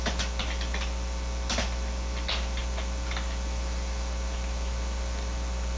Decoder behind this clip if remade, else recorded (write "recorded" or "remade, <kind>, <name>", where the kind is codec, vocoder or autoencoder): recorded